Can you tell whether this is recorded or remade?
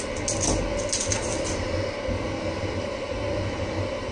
recorded